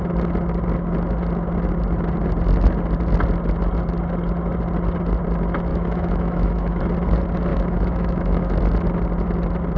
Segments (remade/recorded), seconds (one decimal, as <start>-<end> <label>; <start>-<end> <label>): 0.0-5.7 recorded; 5.7-6.8 remade; 6.8-7.5 recorded; 7.5-8.5 remade; 8.5-9.8 recorded